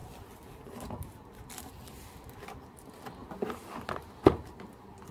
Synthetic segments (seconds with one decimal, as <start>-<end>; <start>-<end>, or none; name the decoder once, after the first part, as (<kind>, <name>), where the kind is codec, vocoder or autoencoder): none